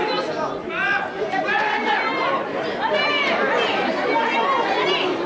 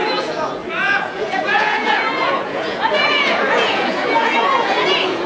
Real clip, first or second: first